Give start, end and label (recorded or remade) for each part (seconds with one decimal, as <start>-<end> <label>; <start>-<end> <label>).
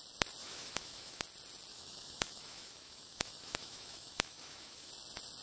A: 0.0-0.4 recorded; 0.4-1.2 remade; 1.2-1.7 recorded; 1.7-4.9 remade; 4.9-5.4 recorded